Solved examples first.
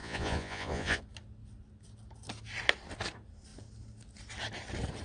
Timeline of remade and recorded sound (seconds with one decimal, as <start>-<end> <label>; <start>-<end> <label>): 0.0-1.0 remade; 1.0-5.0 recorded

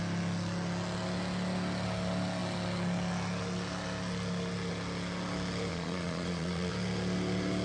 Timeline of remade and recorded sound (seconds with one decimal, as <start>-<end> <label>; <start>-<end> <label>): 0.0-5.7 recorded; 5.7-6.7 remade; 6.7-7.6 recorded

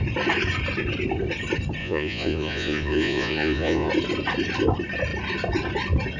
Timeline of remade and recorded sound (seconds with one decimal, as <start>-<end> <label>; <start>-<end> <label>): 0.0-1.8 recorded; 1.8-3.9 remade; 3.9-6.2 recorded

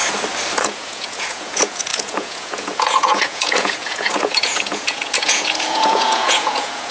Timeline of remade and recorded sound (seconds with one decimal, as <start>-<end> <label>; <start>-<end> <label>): 0.0-0.6 recorded; 0.6-6.9 remade

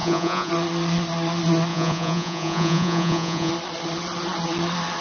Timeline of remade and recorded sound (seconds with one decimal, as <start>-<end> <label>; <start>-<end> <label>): 0.0-0.5 remade; 0.5-1.7 recorded; 1.7-3.5 remade; 3.5-5.0 recorded

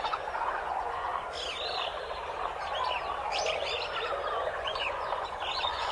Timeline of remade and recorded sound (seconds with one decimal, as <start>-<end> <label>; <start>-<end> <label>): 0.0-1.1 remade; 1.1-4.3 recorded; 4.3-5.9 remade